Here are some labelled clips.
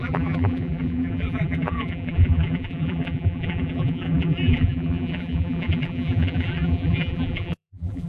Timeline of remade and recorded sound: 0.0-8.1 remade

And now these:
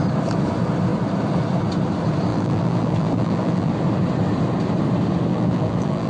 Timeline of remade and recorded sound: 0.0-2.3 recorded; 2.3-3.7 remade; 3.7-5.3 recorded; 5.3-6.1 remade

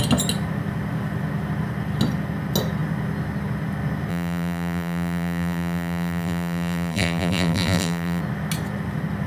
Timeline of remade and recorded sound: 0.0-4.1 recorded; 4.1-8.2 remade; 8.2-9.3 recorded

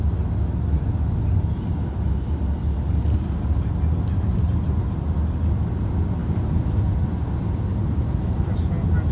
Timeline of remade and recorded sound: 0.0-6.2 recorded; 6.2-6.8 remade; 6.8-7.7 recorded; 7.7-8.4 remade; 8.4-9.1 recorded

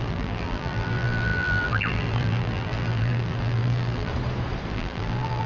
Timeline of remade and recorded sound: 0.0-4.1 remade; 4.1-4.7 recorded; 4.7-5.5 remade

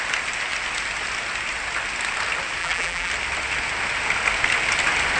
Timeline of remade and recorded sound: 0.0-2.6 recorded; 2.6-3.1 remade; 3.1-5.2 recorded